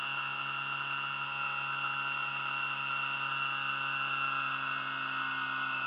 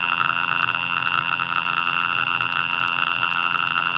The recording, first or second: first